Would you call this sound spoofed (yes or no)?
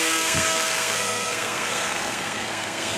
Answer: yes